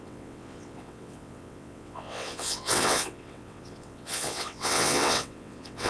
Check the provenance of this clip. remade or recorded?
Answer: remade